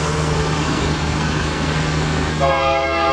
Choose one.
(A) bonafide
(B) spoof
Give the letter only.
B